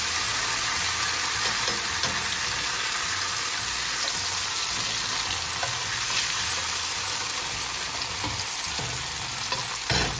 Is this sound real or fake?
real